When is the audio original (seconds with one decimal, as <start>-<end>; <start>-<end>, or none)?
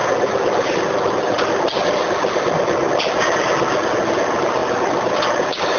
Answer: 0.0-5.8